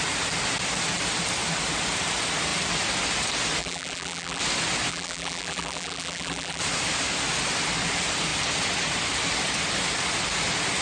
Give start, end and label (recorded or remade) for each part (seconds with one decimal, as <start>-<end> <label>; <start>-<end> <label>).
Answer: 0.0-3.6 recorded; 3.6-4.4 remade; 4.4-4.9 recorded; 4.9-6.6 remade; 6.6-10.8 recorded